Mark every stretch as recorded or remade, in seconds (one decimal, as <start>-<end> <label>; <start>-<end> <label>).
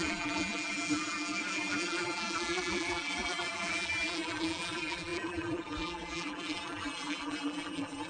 0.0-8.1 remade